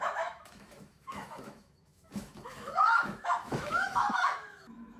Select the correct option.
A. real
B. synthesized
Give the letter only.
B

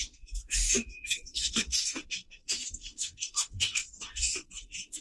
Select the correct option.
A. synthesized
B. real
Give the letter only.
A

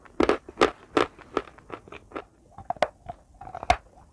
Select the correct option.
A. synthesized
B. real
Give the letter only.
B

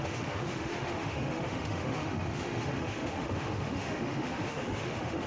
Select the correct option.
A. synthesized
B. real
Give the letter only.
A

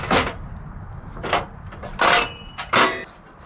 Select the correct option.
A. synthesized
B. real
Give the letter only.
B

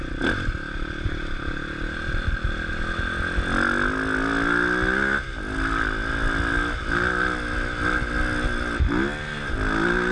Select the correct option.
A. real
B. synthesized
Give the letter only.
A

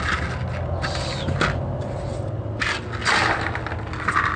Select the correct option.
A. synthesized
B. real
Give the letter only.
B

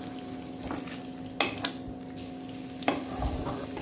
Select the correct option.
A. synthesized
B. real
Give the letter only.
B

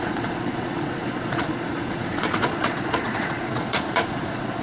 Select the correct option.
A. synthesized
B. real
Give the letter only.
A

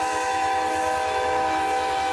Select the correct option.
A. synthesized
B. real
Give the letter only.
A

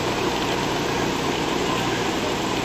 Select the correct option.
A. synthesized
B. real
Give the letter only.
B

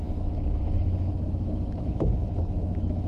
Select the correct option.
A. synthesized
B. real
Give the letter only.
A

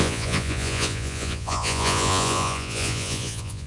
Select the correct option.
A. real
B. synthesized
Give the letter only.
B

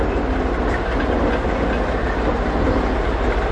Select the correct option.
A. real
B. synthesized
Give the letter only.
A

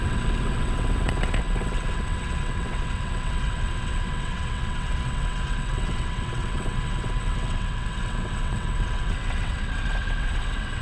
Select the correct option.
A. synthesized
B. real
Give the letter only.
A